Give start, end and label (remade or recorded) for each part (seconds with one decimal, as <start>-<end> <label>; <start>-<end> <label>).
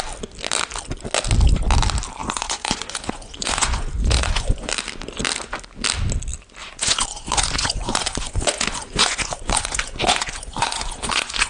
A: 0.0-2.2 recorded; 2.2-4.7 remade; 4.7-6.6 recorded; 6.6-11.5 remade